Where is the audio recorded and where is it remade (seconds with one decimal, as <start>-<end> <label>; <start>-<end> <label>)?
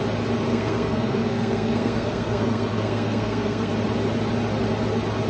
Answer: 0.0-0.5 recorded; 0.5-3.7 remade; 3.7-5.3 recorded